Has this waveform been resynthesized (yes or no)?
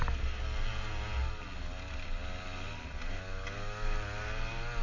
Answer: no